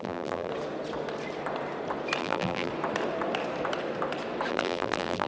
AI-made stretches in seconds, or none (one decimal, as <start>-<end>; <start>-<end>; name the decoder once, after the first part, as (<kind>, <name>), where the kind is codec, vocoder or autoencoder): 0.0-0.5 (vocoder, BigVGAN v2); 2.2-2.7; 4.5-5.3